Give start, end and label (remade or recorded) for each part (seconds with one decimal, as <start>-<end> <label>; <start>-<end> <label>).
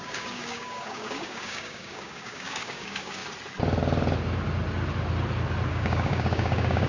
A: 0.0-3.2 remade; 3.2-5.7 recorded; 5.7-6.9 remade